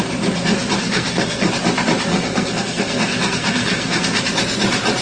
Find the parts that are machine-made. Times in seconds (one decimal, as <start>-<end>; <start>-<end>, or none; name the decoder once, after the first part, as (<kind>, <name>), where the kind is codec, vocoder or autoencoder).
0.8-1.5 (codec, SNAC); 2.1-4.2